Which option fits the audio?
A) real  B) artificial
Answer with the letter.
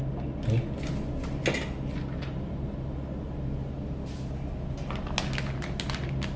A